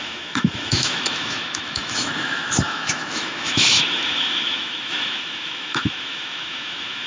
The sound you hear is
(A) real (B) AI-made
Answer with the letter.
B